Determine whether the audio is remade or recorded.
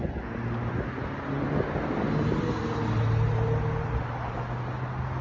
recorded